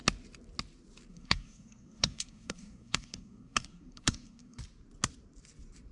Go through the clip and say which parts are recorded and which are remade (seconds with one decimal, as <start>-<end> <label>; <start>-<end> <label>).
0.0-1.1 recorded; 1.1-4.6 remade; 4.6-5.9 recorded